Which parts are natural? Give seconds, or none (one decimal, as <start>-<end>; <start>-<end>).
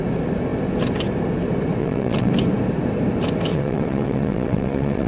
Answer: 0.0-1.8; 2.3-3.5